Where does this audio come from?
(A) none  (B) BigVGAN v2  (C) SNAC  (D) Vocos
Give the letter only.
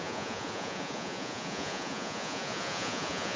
D